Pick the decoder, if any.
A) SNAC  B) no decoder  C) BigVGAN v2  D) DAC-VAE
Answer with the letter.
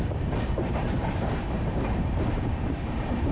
C